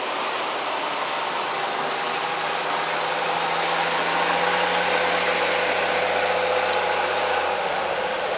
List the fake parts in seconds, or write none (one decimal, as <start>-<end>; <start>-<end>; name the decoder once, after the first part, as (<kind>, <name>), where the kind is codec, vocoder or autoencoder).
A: 7.5-8.4 (autoencoder, DAC-VAE)